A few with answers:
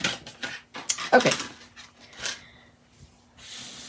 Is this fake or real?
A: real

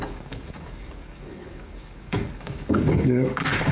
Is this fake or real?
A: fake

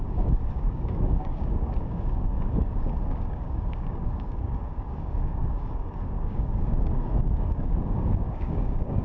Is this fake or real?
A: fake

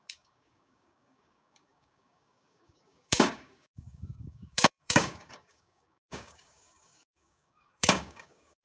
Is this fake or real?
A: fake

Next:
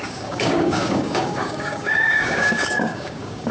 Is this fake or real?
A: fake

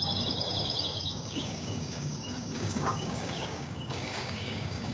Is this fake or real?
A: fake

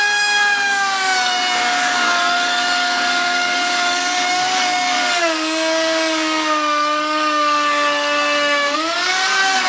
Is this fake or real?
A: fake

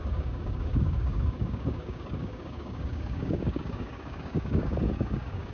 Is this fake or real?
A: fake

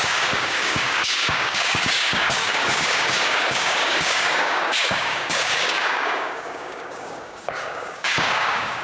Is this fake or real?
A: fake